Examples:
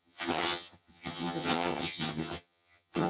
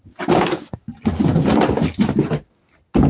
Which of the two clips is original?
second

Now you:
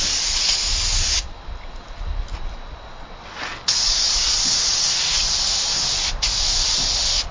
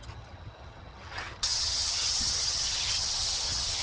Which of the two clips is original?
first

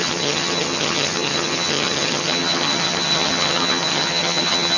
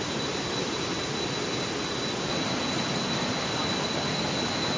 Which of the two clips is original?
second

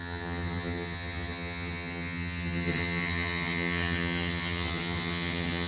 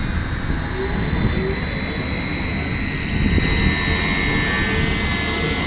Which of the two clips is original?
second